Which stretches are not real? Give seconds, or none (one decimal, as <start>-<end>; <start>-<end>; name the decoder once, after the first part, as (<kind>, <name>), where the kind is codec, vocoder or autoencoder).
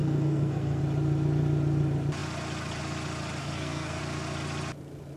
0.0-0.8 (codec, SNAC); 3.4-4.0